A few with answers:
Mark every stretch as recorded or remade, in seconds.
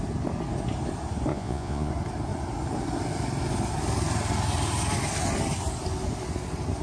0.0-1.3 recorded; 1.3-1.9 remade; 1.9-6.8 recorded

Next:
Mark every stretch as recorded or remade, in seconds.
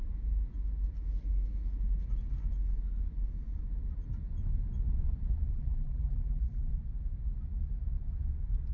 0.0-5.5 recorded; 5.5-6.7 remade; 6.7-8.7 recorded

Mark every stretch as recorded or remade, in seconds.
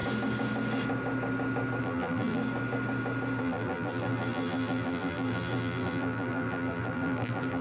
0.0-1.8 recorded; 1.8-2.4 remade; 2.4-3.4 recorded; 3.4-7.6 remade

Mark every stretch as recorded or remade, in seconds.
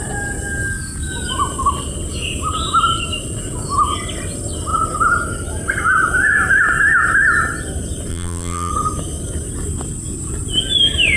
0.0-8.1 recorded; 8.1-8.7 remade; 8.7-11.2 recorded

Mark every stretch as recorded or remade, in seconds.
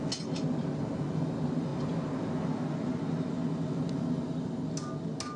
0.0-5.4 recorded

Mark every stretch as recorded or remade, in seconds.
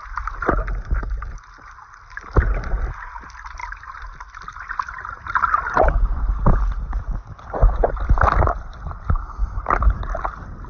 0.0-10.7 recorded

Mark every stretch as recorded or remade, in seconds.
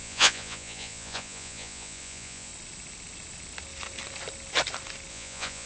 0.0-2.5 remade; 2.5-5.1 recorded; 5.1-5.7 remade